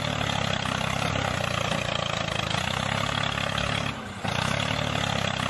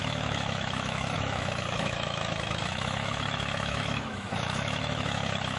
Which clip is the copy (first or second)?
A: second